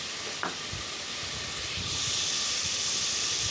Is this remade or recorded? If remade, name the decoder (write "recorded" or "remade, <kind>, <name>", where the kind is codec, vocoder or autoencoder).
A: remade, vocoder, BigVGAN v2